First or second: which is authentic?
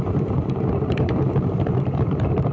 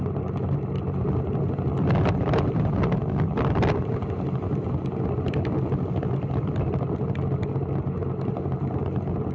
second